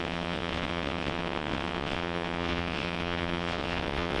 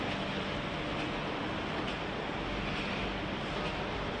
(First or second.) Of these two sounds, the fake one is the first